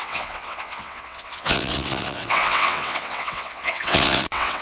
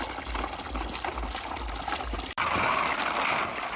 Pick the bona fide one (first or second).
second